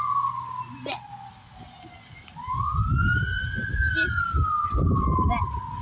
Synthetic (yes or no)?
no